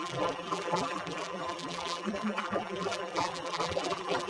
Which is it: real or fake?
fake